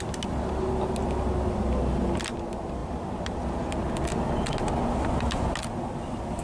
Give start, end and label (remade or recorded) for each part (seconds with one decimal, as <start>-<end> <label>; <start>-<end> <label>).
0.0-6.4 recorded